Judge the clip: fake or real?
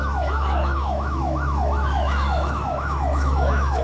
fake